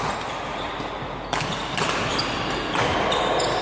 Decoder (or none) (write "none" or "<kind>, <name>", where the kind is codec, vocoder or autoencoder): none